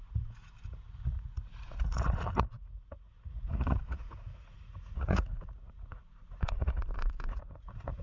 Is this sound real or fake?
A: fake